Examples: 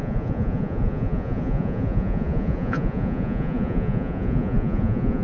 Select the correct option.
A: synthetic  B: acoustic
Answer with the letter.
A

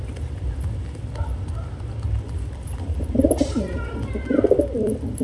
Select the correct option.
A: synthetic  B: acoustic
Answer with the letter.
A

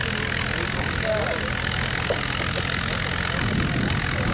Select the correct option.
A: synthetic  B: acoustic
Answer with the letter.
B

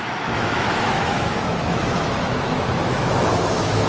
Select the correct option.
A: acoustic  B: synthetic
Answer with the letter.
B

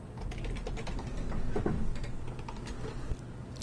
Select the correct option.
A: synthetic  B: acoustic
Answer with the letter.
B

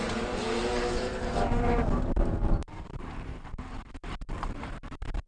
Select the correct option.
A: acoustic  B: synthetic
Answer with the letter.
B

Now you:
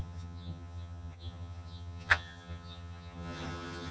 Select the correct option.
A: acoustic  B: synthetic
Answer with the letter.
B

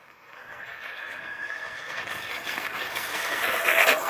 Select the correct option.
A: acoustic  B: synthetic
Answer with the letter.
B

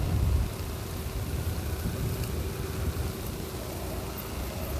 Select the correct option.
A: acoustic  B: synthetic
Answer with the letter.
A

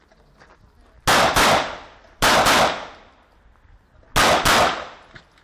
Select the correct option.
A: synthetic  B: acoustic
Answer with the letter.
B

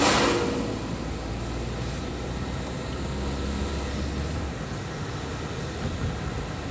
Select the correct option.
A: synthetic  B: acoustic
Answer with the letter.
B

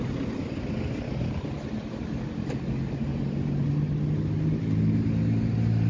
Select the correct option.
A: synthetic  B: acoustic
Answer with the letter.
B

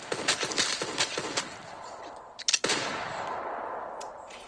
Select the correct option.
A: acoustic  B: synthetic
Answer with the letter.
A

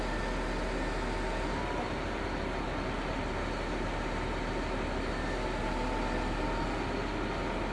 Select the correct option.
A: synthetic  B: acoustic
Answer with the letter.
B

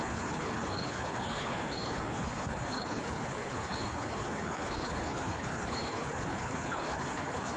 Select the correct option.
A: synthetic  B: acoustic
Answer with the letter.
A